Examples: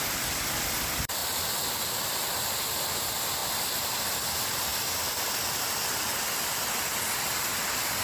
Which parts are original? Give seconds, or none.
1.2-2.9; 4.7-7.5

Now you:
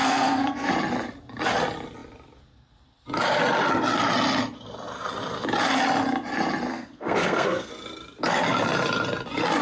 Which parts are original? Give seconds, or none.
0.7-6.7; 7.7-9.6

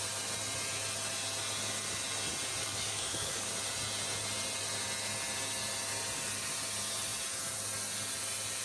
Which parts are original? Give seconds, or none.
0.0-2.6; 3.5-8.6

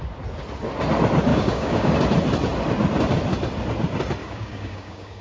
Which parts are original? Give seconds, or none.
0.0-1.3; 1.9-4.2

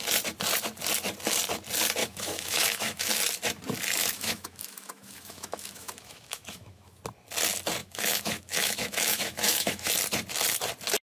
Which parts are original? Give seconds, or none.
0.0-2.0; 3.1-4.0; 7.0-7.8; 9.9-11.2

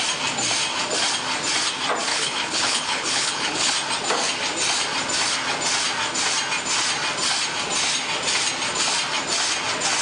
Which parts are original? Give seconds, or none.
0.0-2.1; 3.7-10.0

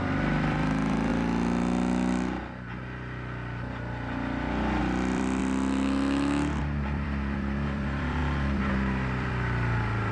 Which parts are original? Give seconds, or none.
1.1-4.8; 5.4-6.6

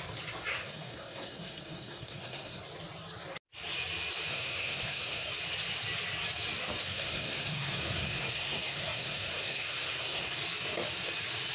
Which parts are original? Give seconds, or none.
0.0-0.5; 2.6-4.3; 5.3-6.8; 10.4-11.5